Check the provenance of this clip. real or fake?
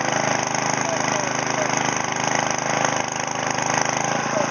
real